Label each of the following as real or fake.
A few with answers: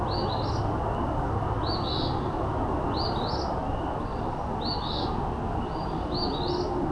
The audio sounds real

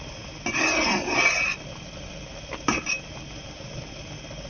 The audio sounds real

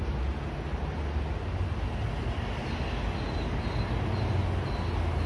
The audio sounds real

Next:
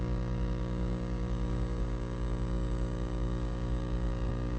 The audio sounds fake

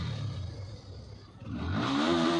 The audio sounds real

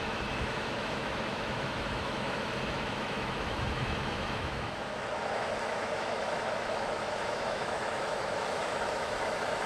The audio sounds fake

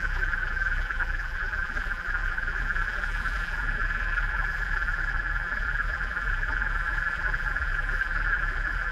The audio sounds fake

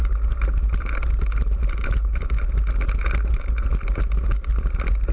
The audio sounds real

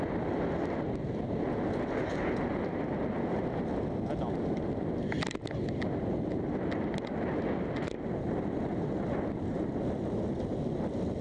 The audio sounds real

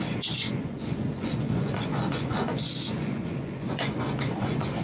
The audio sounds fake